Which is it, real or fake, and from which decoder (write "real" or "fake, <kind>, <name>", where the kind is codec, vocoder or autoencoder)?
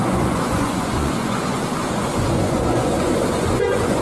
fake, vocoder, Vocos